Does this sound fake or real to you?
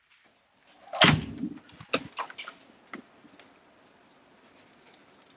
real